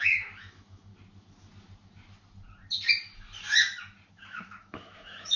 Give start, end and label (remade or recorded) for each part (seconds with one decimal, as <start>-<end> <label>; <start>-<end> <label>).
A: 0.0-0.9 remade; 0.9-4.1 recorded; 4.1-5.4 remade